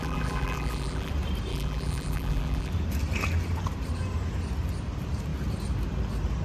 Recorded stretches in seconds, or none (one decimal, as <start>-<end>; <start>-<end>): 1.1-1.5; 2.7-6.4